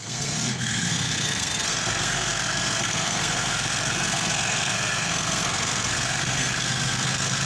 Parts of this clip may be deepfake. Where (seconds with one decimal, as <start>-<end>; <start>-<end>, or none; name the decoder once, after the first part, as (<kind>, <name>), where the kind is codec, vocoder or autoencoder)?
0.0-7.5 (codec, SNAC)